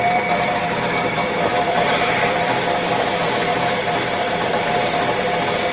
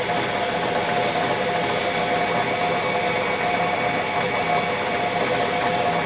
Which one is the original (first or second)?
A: second